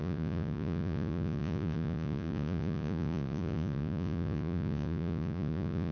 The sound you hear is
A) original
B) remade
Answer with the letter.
B